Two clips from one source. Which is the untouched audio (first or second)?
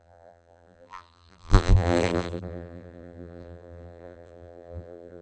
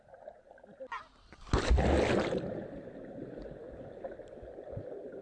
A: second